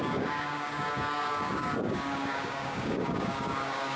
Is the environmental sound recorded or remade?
remade